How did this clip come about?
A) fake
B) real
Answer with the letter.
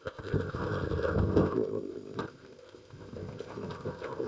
A